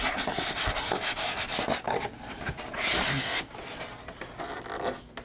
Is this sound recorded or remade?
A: recorded